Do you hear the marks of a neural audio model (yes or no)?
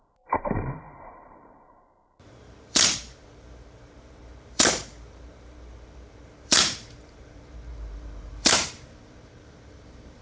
yes